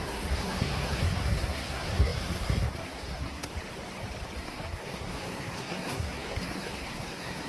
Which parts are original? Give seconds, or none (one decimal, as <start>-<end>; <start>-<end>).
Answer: 3.5-4.4